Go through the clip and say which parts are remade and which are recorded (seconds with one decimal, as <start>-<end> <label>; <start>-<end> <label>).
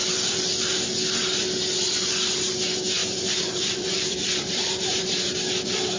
0.0-3.0 recorded; 3.0-5.3 remade; 5.3-6.0 recorded